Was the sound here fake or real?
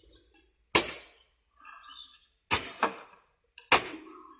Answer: real